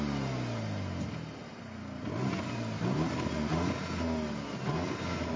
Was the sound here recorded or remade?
recorded